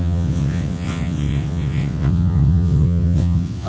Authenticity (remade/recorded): remade